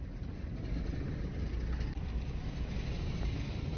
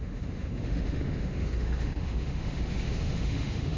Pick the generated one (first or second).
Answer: second